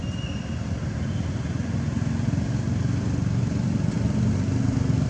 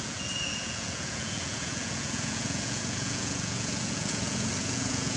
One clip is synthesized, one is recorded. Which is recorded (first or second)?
first